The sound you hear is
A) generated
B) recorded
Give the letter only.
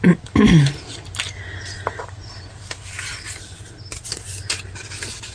B